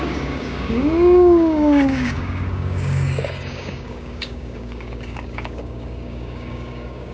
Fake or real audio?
fake